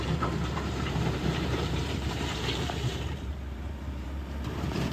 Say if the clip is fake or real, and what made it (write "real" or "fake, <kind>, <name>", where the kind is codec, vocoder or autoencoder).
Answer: fake, vocoder, BigVGAN v2